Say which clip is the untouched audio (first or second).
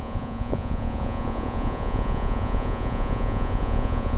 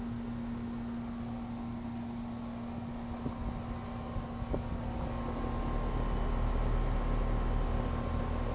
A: second